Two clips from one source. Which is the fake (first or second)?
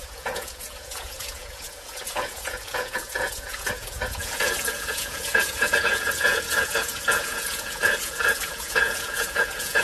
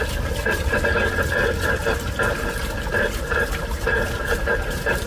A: first